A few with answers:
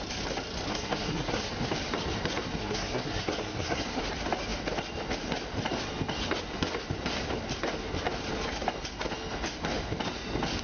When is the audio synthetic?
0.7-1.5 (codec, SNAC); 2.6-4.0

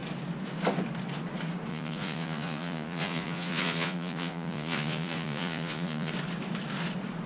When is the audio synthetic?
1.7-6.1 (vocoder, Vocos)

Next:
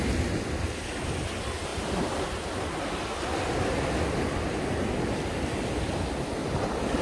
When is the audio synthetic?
6.4-7.0 (vocoder, BigVGAN v2)